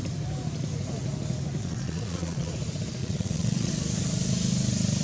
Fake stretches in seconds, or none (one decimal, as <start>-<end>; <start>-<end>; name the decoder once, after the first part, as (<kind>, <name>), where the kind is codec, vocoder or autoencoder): 1.6-2.5 (vocoder, Vocos); 3.0-3.7